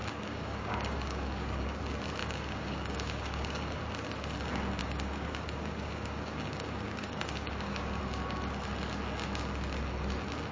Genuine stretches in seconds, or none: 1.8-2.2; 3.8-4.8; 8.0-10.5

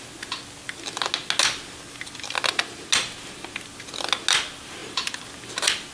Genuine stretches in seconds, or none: 0.0-5.9

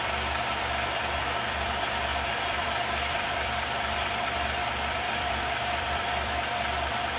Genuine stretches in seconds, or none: none

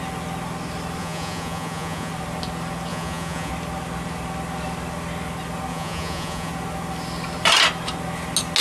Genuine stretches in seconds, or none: 0.0-1.0; 2.1-2.9; 3.5-5.7; 6.5-8.6

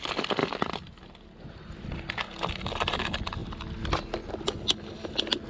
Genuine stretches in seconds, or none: 0.0-5.5

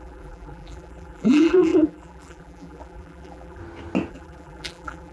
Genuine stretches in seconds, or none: 3.6-4.1

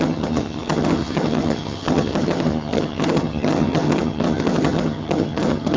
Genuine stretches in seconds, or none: none